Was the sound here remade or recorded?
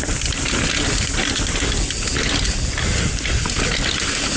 recorded